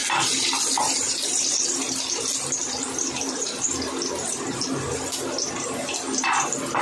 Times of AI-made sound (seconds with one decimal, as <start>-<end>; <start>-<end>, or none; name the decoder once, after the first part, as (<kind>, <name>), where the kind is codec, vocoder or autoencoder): 0.0-6.8 (vocoder, BigVGAN v2)